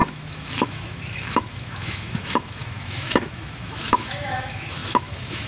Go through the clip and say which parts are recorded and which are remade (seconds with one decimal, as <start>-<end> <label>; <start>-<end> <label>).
0.0-5.5 remade